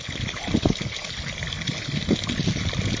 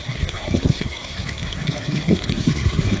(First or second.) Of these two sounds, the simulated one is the second